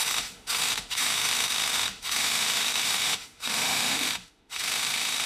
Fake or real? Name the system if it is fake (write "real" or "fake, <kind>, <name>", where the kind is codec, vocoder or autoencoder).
fake, autoencoder, DAC-VAE